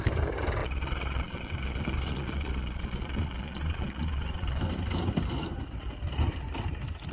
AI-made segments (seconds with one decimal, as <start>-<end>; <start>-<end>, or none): 0.6-4.6